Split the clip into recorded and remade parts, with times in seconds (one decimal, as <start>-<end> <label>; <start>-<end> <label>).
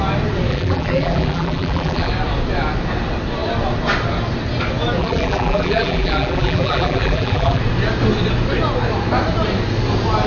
0.0-0.5 recorded; 0.5-2.1 remade; 2.1-5.0 recorded; 5.0-7.6 remade; 7.6-10.3 recorded